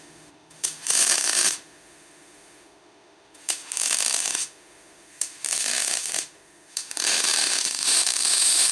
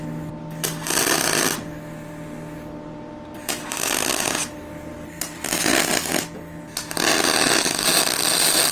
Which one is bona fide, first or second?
second